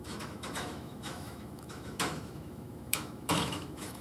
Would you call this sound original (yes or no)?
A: no